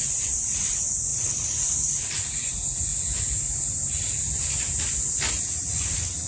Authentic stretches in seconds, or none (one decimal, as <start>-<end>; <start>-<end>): 2.9-5.3